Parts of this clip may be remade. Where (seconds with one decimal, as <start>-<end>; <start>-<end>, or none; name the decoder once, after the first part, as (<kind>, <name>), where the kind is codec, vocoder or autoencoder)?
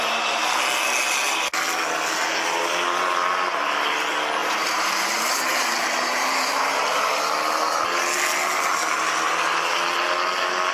4.4-7.1 (vocoder, BigVGAN v2)